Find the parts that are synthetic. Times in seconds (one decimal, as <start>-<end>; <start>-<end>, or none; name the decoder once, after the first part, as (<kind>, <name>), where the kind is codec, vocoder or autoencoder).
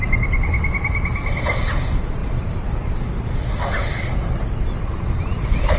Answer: none